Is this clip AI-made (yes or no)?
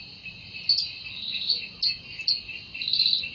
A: no